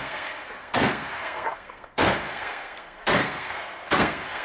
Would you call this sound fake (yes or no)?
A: yes